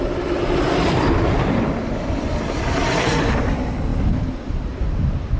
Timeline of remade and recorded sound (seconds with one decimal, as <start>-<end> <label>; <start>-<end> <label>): 0.0-5.4 recorded